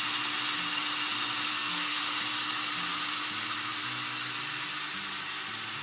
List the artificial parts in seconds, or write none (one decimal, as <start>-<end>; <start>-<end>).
1.5-2.0